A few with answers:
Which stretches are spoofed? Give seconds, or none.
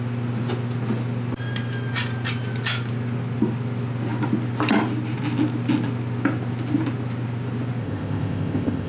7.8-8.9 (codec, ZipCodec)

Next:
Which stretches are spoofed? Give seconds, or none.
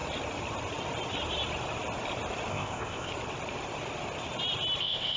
2.5-3.1 (codec, ZipCodec); 4.8-5.2